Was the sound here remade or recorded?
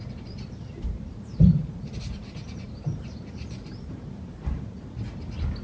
remade